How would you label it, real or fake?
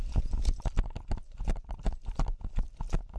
real